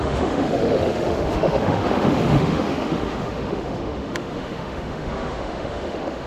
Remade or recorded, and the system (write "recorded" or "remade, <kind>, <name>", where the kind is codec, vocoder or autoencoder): remade, autoencoder, DAC-VAE